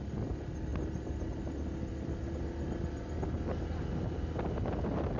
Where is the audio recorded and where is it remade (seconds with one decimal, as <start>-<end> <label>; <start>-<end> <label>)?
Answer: 0.0-5.2 recorded